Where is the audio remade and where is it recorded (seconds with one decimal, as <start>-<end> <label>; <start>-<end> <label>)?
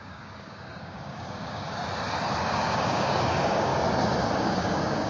0.0-1.8 remade; 1.8-2.4 recorded; 2.4-3.7 remade; 3.7-4.4 recorded; 4.4-5.1 remade